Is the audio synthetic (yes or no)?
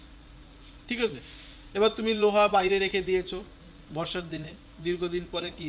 yes